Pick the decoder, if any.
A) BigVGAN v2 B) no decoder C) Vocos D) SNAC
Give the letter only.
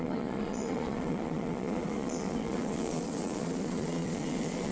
C